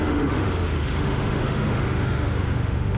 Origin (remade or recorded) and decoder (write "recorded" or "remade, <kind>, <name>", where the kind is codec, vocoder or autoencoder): remade, autoencoder, DAC-VAE